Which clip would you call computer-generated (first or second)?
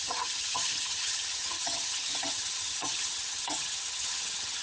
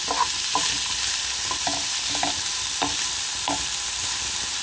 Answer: first